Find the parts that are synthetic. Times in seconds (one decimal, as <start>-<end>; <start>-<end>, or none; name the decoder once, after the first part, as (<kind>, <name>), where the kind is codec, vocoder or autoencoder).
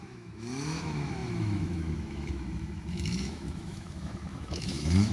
0.0-5.1 (autoencoder, DAC-VAE)